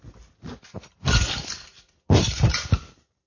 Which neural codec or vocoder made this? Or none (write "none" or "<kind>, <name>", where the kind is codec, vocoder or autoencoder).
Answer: none